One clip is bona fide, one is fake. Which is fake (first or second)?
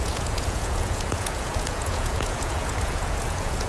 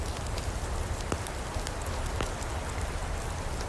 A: first